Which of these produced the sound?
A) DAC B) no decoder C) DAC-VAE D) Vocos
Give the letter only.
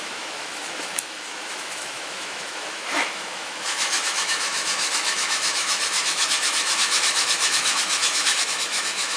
C